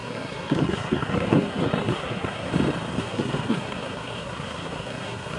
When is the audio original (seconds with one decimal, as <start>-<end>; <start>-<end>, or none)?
2.5-3.0